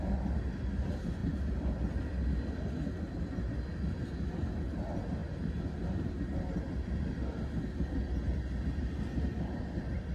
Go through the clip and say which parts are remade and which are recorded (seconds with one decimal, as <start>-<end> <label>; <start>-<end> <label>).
0.0-5.2 recorded; 5.2-6.1 remade; 6.1-10.1 recorded